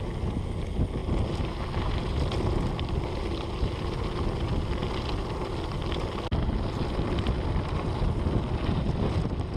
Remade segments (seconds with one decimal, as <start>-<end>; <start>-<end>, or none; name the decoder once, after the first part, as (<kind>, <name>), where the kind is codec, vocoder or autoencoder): none